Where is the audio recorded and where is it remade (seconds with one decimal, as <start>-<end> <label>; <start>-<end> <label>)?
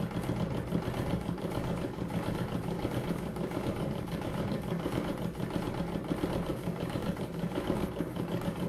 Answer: 0.0-1.1 recorded; 1.1-5.1 remade; 5.1-6.5 recorded; 6.5-8.7 remade